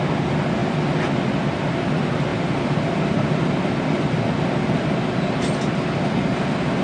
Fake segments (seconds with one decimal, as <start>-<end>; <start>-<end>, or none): none